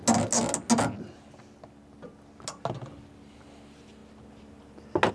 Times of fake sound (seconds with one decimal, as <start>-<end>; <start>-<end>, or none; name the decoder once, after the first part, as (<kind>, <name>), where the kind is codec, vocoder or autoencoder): none